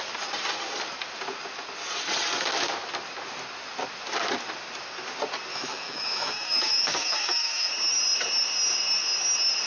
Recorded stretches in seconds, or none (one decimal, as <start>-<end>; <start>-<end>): 0.0-5.5; 7.7-9.7